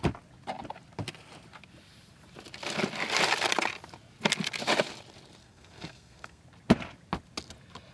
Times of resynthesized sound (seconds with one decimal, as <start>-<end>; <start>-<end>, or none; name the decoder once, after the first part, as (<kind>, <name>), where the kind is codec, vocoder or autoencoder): 5.4-6.4 (codec, SNAC)